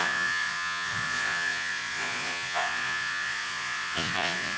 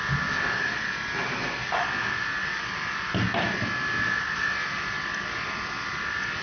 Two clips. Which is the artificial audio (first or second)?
first